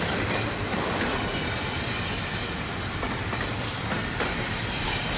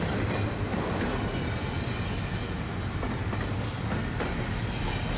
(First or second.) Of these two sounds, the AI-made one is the first